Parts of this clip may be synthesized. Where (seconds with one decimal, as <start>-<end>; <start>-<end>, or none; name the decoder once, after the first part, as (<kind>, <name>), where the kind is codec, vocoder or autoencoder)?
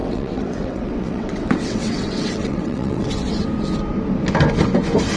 0.0-3.1 (vocoder, WaveNeXt)